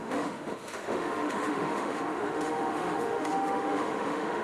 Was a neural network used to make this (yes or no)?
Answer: yes